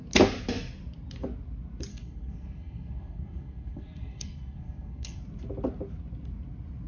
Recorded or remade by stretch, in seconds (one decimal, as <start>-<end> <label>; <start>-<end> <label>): 0.0-1.9 recorded; 1.9-5.2 remade; 5.2-6.9 recorded